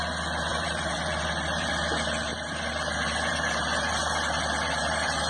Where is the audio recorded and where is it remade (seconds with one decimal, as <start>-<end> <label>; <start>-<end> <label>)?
0.0-0.5 recorded; 0.5-1.7 remade; 1.7-2.3 recorded; 2.3-5.3 remade